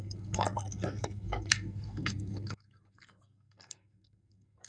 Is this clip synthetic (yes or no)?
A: yes